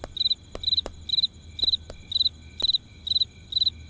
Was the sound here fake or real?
real